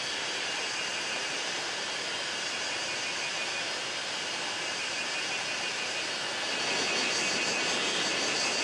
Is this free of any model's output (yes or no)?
yes